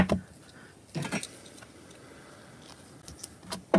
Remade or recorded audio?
recorded